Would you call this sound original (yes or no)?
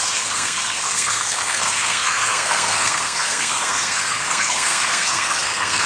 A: no